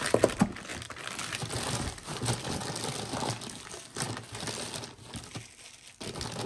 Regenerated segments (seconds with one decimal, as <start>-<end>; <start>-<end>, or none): none